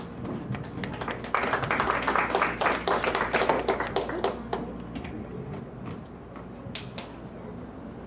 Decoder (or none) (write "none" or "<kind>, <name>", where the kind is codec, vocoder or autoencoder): none